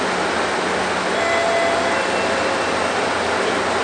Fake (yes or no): no